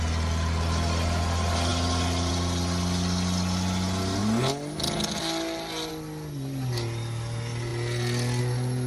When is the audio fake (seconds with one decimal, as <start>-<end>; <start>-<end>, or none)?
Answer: none